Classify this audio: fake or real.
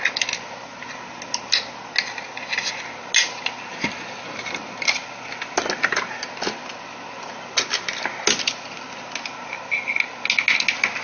real